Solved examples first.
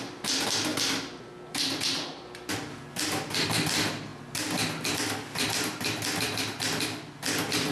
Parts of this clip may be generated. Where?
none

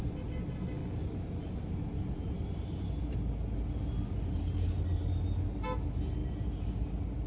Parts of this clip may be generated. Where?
none

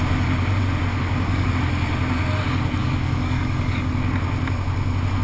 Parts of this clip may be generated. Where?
0.9-1.5 (codec, DAC); 2.8-3.9

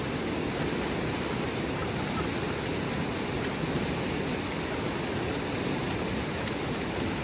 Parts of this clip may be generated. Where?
none

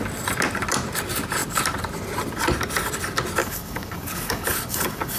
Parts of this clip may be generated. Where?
3.4-5.2 (codec, DAC)

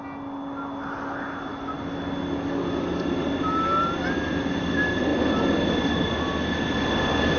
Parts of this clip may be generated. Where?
none

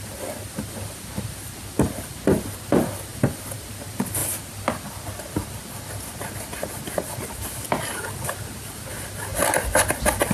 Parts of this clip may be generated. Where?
none